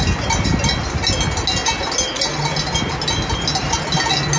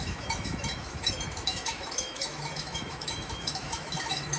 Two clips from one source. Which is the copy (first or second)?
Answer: second